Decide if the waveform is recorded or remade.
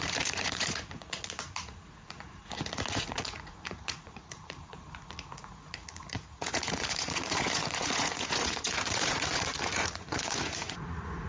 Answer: remade